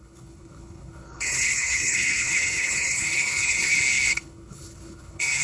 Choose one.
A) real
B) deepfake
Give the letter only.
B